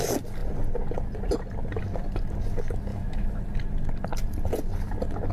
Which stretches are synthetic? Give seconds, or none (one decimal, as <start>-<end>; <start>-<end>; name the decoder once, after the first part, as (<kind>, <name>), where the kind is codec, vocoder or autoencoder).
2.9-3.4 (autoencoder, DAC-VAE)